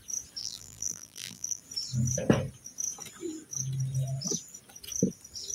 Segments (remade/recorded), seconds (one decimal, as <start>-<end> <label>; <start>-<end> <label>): 0.0-0.4 recorded; 0.4-1.6 remade; 1.6-5.5 recorded